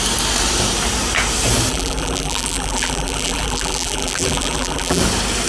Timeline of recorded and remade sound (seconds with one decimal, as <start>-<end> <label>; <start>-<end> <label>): 0.0-1.7 recorded; 1.7-5.0 remade; 5.0-5.5 recorded